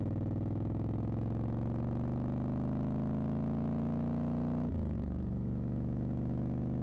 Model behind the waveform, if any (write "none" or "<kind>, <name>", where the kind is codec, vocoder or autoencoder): autoencoder, DAC-VAE